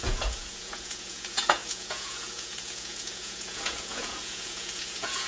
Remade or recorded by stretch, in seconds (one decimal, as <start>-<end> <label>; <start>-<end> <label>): 0.0-5.3 remade